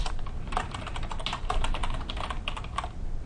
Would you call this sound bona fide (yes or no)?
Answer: yes